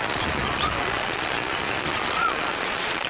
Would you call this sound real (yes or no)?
no